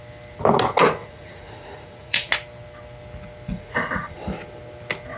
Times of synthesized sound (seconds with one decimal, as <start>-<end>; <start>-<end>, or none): 1.0-2.3; 3.5-4.2